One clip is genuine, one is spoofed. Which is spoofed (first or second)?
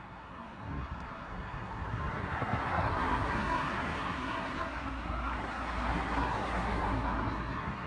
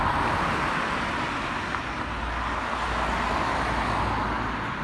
first